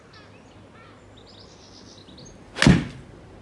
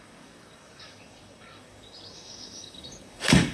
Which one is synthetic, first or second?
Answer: second